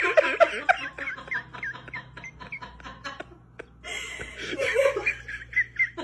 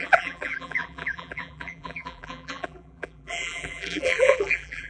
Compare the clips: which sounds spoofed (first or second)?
second